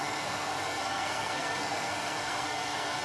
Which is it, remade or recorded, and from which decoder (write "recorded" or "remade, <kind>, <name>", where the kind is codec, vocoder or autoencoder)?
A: remade, codec, SNAC